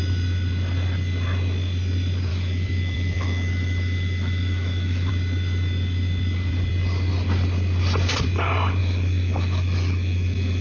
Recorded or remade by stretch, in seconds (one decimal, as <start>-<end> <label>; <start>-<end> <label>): 0.0-2.3 recorded; 2.3-5.1 remade; 5.1-8.8 recorded; 8.8-10.6 remade